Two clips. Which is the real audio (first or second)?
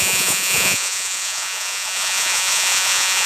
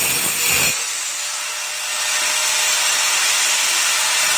second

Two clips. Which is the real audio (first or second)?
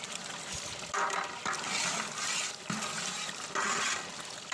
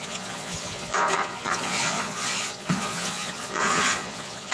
first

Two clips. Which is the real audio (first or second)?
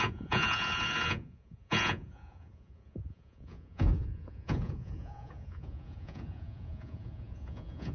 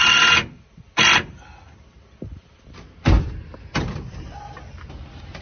second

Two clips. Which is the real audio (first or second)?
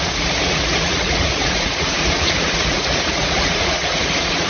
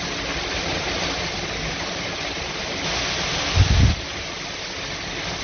second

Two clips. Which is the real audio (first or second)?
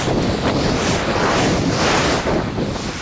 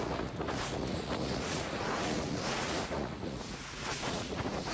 first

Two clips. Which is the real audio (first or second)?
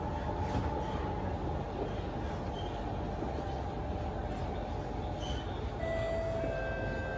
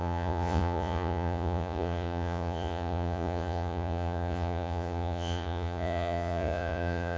first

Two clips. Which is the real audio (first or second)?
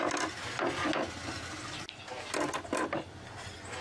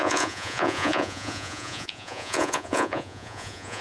first